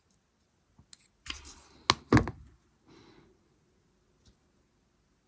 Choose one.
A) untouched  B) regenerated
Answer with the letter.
A